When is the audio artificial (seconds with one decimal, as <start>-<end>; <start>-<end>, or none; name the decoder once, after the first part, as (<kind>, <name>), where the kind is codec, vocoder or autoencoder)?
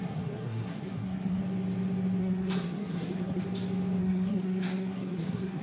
0.0-1.4 (codec, SNAC); 2.2-3.4; 4.0-5.6